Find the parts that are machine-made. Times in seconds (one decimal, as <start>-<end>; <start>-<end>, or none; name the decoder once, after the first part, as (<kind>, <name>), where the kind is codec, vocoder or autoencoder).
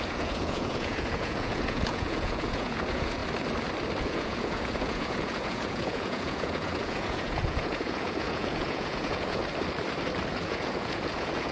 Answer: 0.0-3.2 (vocoder, Vocos); 4.0-9.4; 10.3-11.5